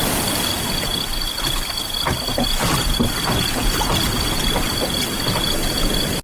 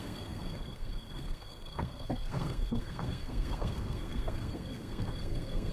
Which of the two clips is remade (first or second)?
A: second